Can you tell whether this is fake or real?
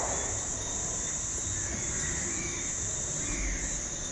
real